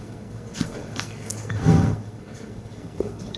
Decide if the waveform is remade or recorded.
remade